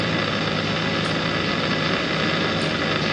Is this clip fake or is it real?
real